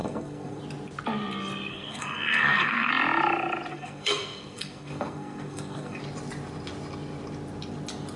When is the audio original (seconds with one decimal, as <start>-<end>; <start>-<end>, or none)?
0.6-1.7; 2.9-3.7; 6.0-8.2